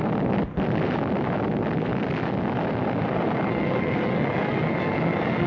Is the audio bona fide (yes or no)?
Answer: yes